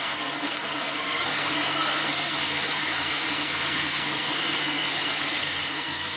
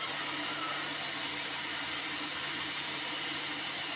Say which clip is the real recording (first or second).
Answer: second